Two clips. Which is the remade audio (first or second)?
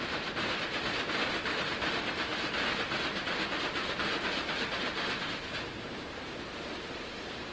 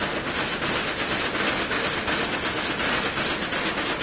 first